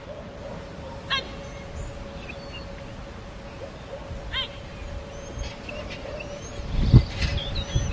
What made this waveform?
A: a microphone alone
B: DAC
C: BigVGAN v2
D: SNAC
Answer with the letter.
A